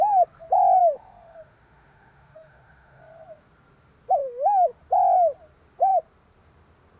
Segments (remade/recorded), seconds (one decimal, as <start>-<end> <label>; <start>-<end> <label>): 0.0-0.8 recorded; 0.8-3.0 remade; 3.0-4.2 recorded; 4.2-4.8 remade; 4.8-7.0 recorded